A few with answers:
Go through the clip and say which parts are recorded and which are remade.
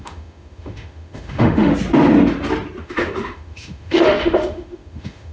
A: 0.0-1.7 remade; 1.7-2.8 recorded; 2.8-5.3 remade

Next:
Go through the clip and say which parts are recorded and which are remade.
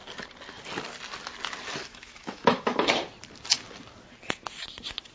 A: 0.0-1.9 recorded; 1.9-2.9 remade; 2.9-5.1 recorded